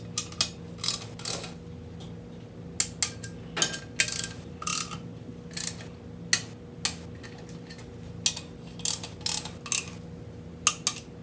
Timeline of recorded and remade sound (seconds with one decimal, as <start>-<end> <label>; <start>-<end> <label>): 0.0-11.2 recorded